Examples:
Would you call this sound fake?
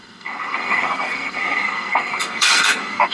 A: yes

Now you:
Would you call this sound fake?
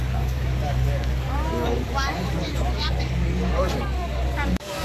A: yes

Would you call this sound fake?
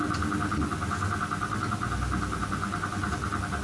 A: no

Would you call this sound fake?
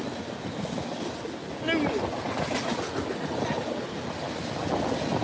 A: no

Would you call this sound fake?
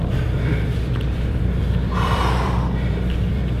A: yes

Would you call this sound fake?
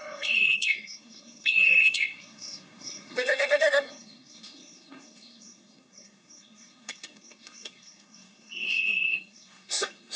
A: yes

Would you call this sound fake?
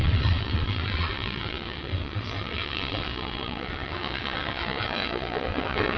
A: yes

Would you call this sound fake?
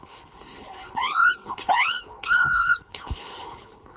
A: yes